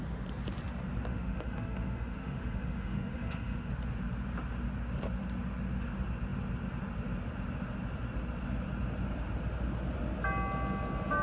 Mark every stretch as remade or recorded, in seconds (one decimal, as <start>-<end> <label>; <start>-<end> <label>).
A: 0.0-1.1 recorded; 1.1-3.7 remade; 3.7-11.2 recorded